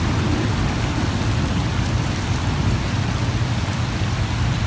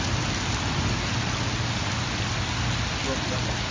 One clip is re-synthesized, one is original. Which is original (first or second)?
second